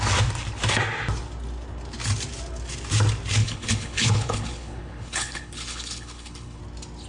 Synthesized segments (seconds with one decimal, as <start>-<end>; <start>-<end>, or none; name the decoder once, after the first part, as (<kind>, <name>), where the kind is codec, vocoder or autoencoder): 3.4-6.6 (codec, HILCodec)